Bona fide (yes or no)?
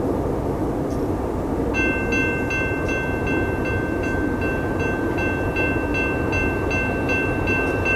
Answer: yes